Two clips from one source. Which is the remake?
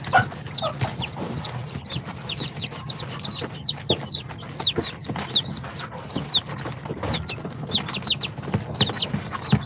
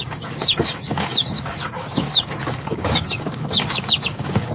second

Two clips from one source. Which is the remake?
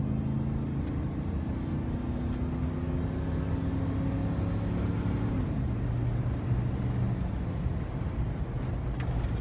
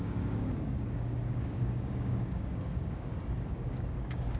second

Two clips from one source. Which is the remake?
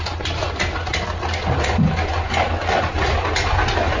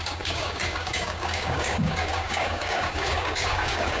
second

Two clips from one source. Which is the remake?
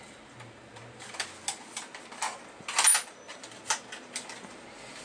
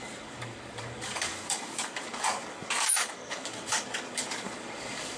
second